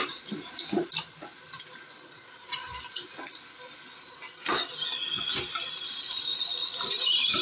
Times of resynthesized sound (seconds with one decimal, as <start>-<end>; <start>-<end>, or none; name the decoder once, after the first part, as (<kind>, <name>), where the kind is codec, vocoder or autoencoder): 0.0-1.3 (vocoder, BigVGAN v2); 5.7-6.3; 6.8-7.4